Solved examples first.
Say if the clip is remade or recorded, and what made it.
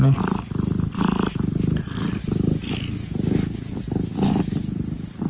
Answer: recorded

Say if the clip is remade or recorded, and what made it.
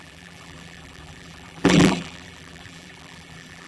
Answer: remade, vocoder, BigVGAN v2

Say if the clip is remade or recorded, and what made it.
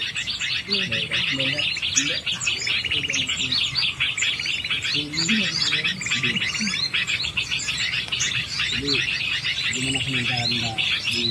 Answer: recorded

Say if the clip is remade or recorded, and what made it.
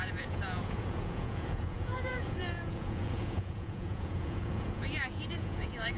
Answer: remade, vocoder, Vocos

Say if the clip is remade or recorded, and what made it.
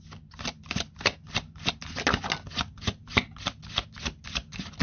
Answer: recorded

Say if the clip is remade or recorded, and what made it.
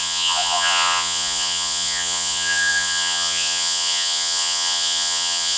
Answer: remade, vocoder, Vocos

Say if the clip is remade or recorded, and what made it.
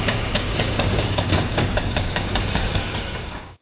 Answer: remade, codec, DAC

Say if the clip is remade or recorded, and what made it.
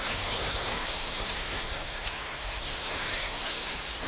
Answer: remade, codec, SNAC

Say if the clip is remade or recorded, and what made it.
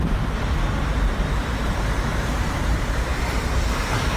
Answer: remade, vocoder, BigVGAN v2